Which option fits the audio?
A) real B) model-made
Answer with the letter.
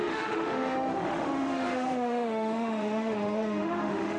B